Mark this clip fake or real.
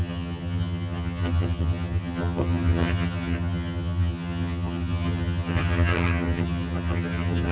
fake